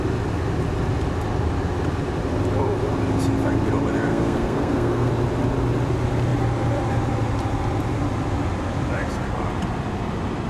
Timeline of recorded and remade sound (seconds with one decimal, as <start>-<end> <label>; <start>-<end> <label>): 0.0-4.1 recorded; 4.1-5.1 remade; 5.1-10.5 recorded